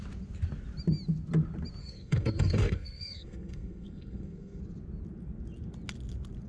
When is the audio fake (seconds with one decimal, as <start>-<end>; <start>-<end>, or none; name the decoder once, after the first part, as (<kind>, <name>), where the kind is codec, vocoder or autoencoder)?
1.8-4.6 (codec, SNAC)